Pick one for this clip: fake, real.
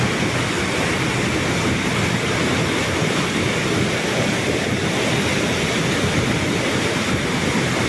real